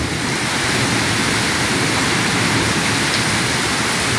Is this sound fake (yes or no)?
no